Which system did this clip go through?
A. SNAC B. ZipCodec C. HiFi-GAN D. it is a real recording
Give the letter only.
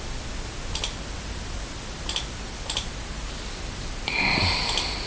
D